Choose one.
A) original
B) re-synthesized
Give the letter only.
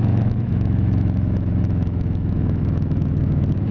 B